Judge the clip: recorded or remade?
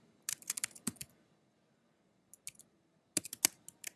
recorded